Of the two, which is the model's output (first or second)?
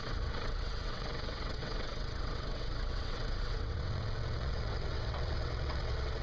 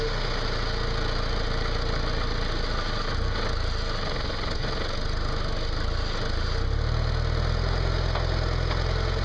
first